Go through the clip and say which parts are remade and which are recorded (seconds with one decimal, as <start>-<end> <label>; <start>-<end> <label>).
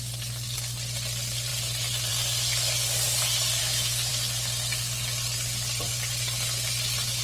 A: 0.0-3.6 recorded; 3.6-4.1 remade; 4.1-7.2 recorded